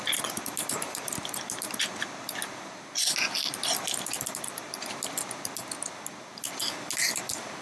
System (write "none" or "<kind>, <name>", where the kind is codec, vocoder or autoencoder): none